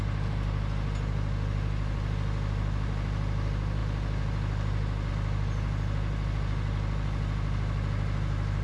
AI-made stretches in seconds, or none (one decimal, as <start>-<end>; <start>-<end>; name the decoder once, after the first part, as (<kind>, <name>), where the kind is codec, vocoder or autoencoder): none